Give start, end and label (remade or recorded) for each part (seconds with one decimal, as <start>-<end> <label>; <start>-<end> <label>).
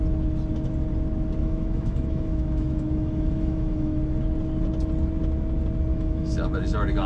0.0-1.4 recorded; 1.4-4.0 remade; 4.0-5.9 recorded; 5.9-6.4 remade; 6.4-7.1 recorded